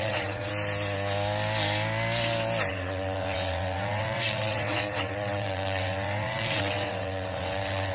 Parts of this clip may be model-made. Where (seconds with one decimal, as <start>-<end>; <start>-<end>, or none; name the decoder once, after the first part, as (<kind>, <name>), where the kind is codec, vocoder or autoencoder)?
0.0-0.5 (vocoder, WaveNeXt); 2.7-7.9